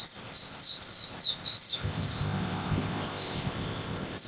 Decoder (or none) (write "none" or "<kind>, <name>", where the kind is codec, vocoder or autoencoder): codec, ZipCodec